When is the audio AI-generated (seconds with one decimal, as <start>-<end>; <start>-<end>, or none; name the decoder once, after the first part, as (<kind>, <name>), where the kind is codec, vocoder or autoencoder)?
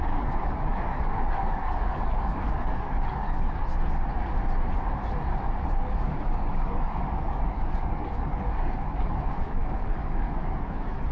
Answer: 0.0-3.7 (codec, DAC); 5.6-11.1